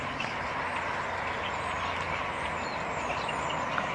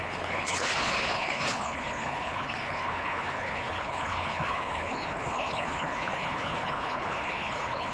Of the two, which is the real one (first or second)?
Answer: first